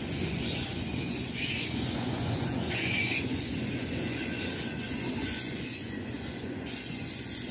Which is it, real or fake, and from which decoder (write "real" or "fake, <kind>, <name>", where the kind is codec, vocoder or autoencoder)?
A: fake, vocoder, Vocos